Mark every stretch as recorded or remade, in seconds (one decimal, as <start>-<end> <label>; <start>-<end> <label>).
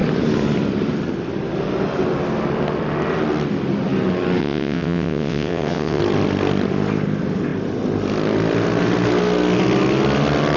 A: 0.0-4.4 recorded; 4.4-6.0 remade; 6.0-10.6 recorded